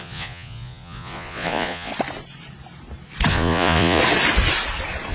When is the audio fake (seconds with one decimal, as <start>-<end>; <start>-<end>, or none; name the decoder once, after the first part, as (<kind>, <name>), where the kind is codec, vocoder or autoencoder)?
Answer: 0.0-1.9 (vocoder, Vocos); 3.3-4.0